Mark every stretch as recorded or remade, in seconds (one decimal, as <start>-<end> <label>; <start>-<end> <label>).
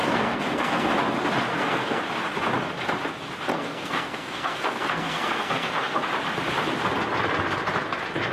0.0-0.9 remade; 0.9-1.5 recorded; 1.5-2.0 remade; 2.0-3.5 recorded; 3.5-6.0 remade; 6.0-8.3 recorded